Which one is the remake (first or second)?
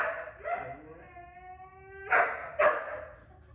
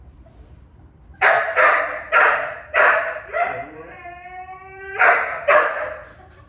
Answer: second